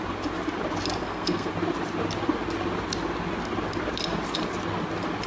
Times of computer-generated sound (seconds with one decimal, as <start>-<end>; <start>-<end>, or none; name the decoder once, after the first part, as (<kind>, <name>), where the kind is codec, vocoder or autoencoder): 1.0-1.5 (codec, SNAC)